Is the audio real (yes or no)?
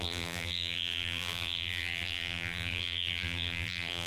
no